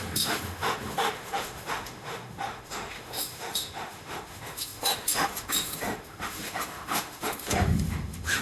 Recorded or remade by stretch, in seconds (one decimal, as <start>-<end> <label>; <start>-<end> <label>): 0.0-8.4 remade